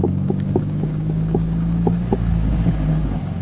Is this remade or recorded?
remade